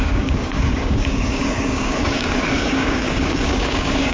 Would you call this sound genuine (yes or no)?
no